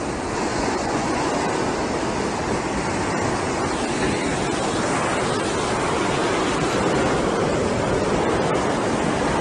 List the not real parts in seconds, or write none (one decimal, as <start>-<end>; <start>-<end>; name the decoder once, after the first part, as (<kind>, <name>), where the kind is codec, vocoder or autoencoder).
0.5-1.3 (vocoder, Vocos)